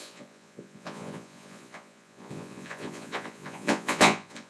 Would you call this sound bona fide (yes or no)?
no